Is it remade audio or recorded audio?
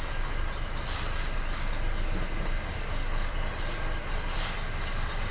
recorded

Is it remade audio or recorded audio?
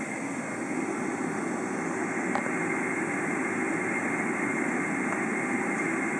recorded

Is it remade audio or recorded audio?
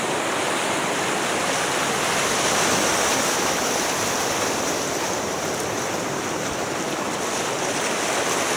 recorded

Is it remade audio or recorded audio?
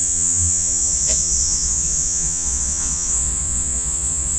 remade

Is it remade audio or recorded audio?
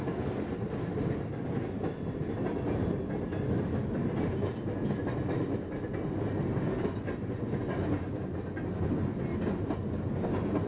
recorded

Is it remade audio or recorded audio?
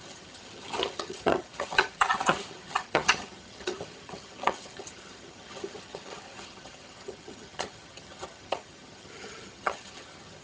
remade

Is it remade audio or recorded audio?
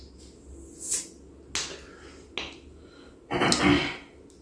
recorded